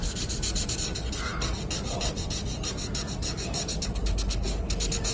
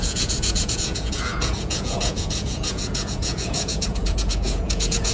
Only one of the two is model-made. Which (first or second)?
second